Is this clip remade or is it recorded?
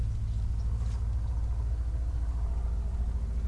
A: recorded